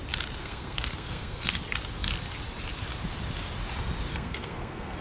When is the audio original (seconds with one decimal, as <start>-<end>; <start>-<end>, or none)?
0.0-0.4; 1.6-4.1